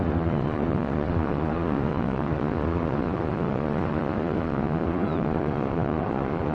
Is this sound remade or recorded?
remade